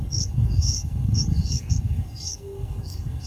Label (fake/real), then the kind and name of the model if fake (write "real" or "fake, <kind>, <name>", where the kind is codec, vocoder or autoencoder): fake, codec, SNAC